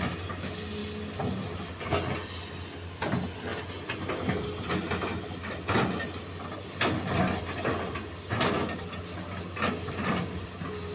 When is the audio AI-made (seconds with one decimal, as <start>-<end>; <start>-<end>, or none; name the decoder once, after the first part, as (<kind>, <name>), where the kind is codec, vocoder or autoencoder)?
none